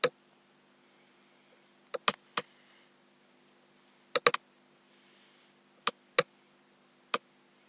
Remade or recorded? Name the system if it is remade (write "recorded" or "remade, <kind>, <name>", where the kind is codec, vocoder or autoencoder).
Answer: recorded